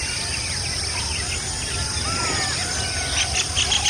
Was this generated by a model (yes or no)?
no